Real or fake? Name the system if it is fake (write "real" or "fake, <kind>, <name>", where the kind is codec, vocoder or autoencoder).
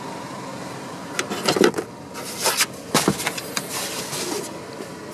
real